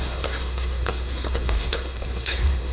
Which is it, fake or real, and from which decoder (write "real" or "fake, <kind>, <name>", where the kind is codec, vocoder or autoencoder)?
fake, codec, SNAC